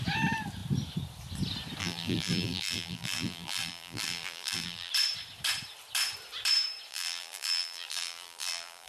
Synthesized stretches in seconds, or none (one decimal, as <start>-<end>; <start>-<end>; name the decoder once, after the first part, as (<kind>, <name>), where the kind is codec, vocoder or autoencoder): 1.8-4.9 (vocoder, BigVGAN v2); 6.9-8.9